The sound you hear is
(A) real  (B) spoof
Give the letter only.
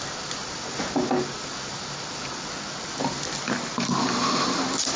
A